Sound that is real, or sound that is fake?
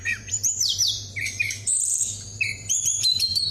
fake